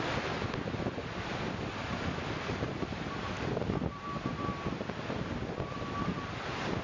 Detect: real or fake real